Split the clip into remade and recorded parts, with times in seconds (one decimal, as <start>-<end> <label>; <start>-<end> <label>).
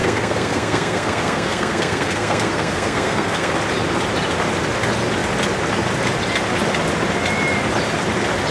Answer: 0.0-3.5 remade; 3.5-8.5 recorded